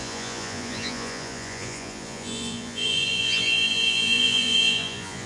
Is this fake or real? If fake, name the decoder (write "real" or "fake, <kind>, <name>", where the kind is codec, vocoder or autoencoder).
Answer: fake, vocoder, Vocos